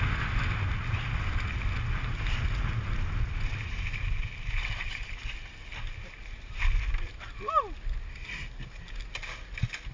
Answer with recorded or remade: recorded